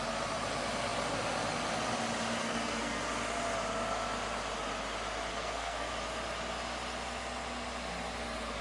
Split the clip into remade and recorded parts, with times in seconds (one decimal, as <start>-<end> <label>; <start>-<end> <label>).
0.0-2.4 recorded; 2.4-3.0 remade; 3.0-5.3 recorded; 5.3-5.9 remade; 5.9-8.6 recorded